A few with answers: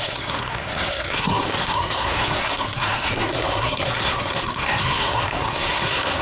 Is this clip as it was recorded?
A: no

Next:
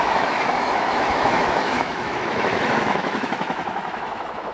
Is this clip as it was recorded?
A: no